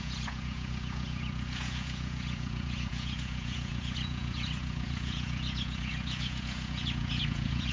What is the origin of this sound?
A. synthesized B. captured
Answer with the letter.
A